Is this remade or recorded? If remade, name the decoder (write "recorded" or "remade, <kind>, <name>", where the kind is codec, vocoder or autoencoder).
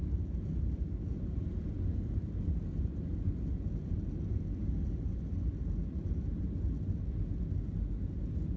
recorded